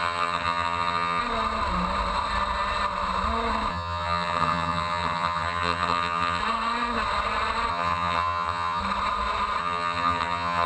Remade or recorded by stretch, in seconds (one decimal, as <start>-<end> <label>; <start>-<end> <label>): 0.0-1.2 remade; 1.2-3.7 recorded; 3.7-6.4 remade; 6.4-7.7 recorded; 7.7-8.8 remade; 8.8-9.6 recorded; 9.6-10.7 remade